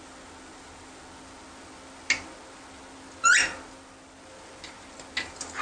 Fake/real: real